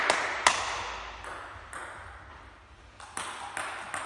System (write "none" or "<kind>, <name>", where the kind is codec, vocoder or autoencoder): none